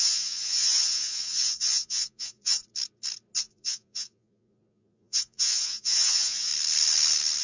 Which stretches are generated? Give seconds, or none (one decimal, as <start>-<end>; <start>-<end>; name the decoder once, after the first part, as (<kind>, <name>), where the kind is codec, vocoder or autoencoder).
0.0-2.6 (vocoder, Vocos); 3.4-6.5